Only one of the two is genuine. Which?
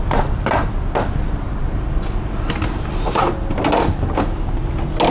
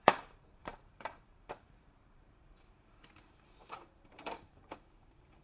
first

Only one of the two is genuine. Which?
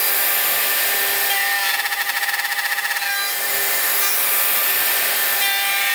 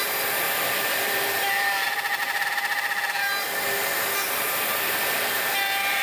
first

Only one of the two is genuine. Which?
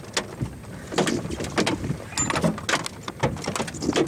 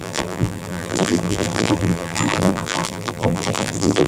first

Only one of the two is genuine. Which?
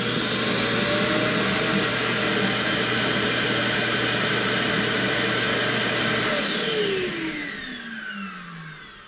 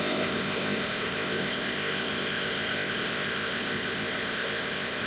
first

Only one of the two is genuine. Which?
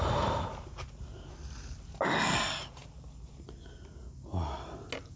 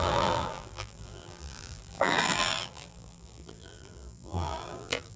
first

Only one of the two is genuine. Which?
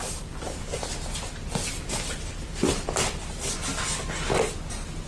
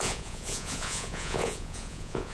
first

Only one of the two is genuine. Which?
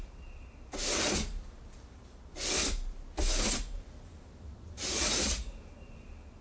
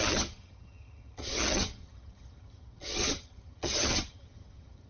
first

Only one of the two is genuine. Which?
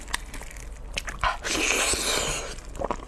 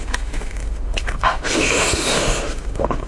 first